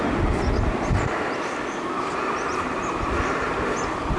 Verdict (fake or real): real